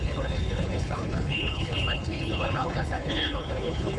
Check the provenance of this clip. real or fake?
fake